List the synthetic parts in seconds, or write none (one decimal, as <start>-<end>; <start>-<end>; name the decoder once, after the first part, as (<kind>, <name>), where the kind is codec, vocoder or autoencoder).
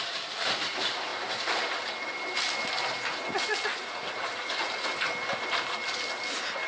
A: 3.7-5.1 (vocoder, Vocos)